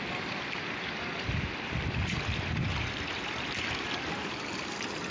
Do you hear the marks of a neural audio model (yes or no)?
yes